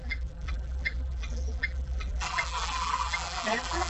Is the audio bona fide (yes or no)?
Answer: no